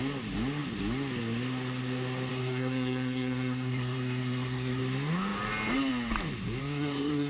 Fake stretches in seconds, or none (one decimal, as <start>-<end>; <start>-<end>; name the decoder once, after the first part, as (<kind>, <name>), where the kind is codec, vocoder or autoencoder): 2.3-4.8 (codec, SNAC); 6.6-7.3